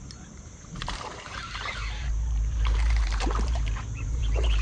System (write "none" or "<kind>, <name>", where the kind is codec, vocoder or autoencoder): vocoder, BigVGAN v2